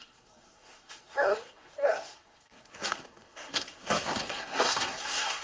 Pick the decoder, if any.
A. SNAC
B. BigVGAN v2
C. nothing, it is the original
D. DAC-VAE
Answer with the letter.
A